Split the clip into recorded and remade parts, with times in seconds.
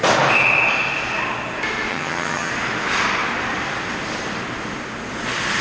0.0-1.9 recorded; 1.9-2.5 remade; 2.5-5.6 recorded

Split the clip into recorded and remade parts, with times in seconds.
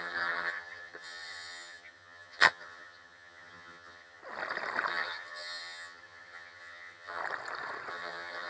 0.0-4.2 remade; 4.2-4.9 recorded; 4.9-7.2 remade; 7.2-7.9 recorded; 7.9-8.5 remade